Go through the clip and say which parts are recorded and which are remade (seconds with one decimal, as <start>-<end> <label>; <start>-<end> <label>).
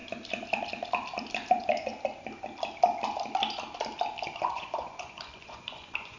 0.0-1.5 recorded; 1.5-1.9 remade; 1.9-4.3 recorded; 4.3-6.2 remade